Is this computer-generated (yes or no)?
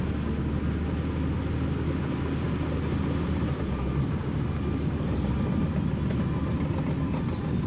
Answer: no